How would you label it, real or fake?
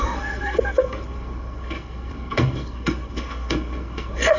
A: fake